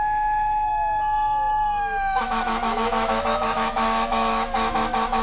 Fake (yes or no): yes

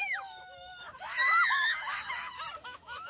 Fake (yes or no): yes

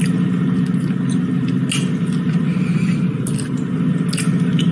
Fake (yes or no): no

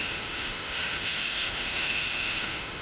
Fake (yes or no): yes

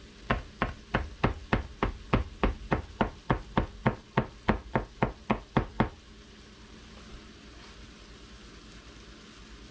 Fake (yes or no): no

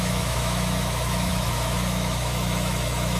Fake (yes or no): yes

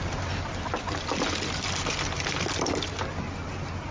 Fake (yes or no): no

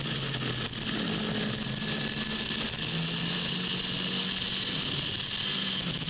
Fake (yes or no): no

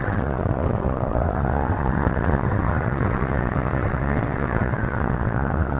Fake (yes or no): yes